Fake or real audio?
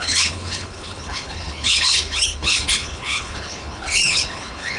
fake